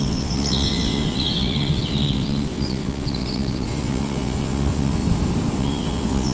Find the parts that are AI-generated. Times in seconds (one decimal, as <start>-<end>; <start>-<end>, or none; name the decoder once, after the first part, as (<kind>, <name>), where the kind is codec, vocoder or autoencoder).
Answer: 0.0-5.0 (vocoder, WaveNeXt); 5.6-6.3